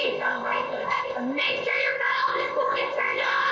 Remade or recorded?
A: remade